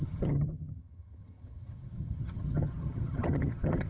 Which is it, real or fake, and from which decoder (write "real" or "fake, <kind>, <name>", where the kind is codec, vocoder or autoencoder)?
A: fake, vocoder, HiFi-GAN